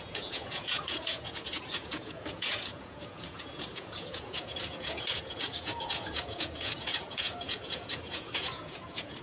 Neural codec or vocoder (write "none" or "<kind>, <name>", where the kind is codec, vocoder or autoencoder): vocoder, Vocos